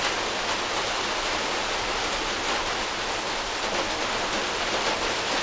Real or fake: real